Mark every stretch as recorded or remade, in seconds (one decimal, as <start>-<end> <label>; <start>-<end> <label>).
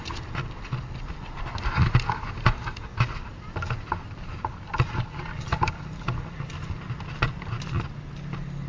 0.0-1.1 remade; 1.1-2.9 recorded; 2.9-3.7 remade; 3.7-4.7 recorded; 4.7-6.5 remade; 6.5-8.7 recorded